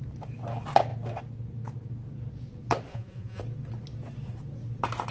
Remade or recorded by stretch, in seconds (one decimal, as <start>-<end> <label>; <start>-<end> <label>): 0.0-2.9 recorded; 2.9-3.4 remade; 3.4-5.1 recorded

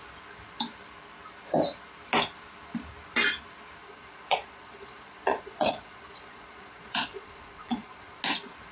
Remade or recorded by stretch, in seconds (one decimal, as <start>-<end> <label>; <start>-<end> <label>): 0.0-3.8 recorded; 3.8-8.2 remade; 8.2-8.7 recorded

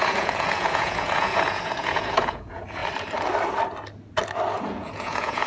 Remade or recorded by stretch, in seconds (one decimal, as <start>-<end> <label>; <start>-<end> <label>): 0.0-2.8 remade; 2.8-4.6 recorded; 4.6-5.5 remade